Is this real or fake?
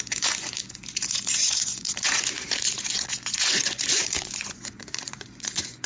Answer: fake